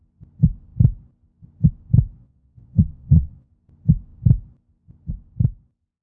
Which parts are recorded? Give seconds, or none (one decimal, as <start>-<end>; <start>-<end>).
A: 0.0-2.2; 3.5-6.0